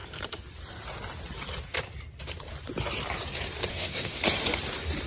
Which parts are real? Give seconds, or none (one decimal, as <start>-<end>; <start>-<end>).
0.0-3.7; 4.2-5.1